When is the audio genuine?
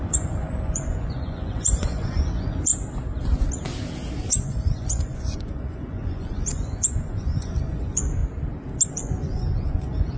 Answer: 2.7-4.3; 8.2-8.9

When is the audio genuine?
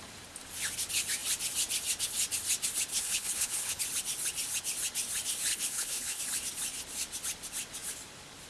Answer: 0.0-2.9; 3.8-5.5; 6.2-8.5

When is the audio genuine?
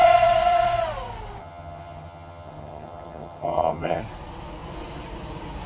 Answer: 0.0-1.4; 4.0-5.7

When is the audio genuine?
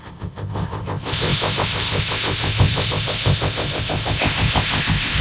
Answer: none